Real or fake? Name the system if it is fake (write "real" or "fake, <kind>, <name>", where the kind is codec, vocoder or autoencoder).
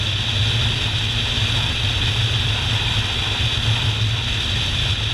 real